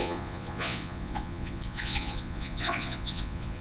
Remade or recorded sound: remade